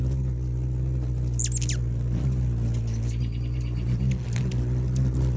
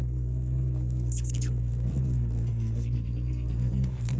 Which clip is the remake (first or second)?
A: second